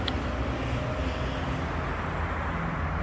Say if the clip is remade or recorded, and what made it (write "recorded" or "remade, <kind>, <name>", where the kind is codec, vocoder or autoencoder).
recorded